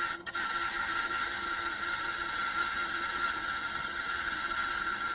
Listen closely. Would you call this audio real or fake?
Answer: fake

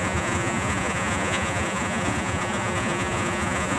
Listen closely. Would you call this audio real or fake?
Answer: fake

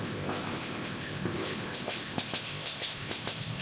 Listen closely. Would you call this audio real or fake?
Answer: fake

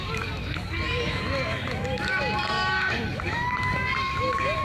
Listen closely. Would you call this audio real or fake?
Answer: fake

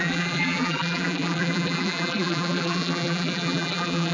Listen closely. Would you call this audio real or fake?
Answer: fake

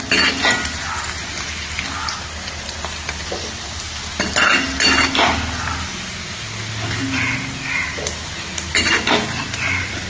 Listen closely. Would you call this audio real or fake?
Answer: real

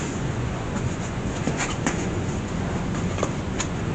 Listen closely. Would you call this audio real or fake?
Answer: fake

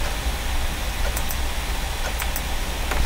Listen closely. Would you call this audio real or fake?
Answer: real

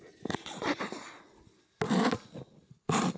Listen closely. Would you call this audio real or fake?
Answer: real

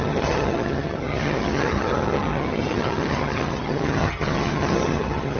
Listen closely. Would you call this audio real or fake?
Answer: fake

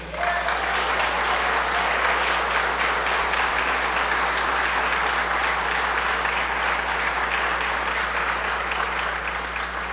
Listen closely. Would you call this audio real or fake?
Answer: real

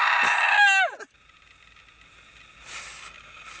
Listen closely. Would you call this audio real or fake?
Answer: real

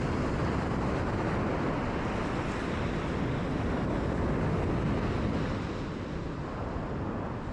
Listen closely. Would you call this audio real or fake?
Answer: real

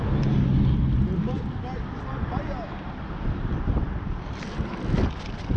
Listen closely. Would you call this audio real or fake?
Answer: real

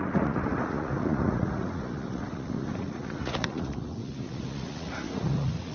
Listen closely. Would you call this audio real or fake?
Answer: fake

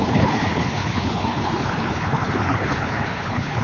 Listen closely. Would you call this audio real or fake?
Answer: fake